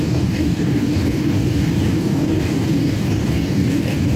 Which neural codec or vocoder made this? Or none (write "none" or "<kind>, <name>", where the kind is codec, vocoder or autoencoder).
codec, DAC